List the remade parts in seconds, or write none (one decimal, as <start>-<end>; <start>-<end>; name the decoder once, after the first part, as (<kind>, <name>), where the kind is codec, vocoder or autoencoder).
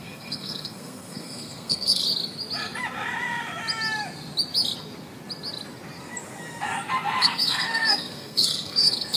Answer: 0.0-2.0 (codec, SNAC); 7.2-9.2